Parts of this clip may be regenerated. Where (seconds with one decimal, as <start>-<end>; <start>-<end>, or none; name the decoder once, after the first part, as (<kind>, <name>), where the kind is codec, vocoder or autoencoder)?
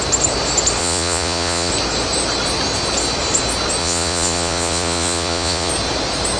0.8-1.7 (vocoder, Vocos); 3.8-5.7